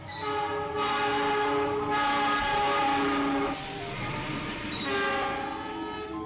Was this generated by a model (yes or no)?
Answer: no